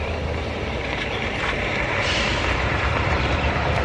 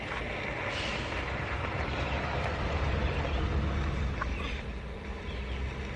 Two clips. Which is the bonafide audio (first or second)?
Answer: second